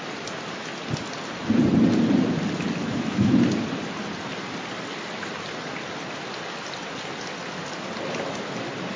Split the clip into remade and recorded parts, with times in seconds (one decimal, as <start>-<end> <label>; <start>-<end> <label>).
0.0-2.8 recorded; 2.8-3.4 remade; 3.4-9.0 recorded